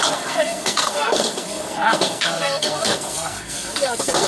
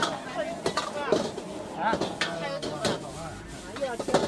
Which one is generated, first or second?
first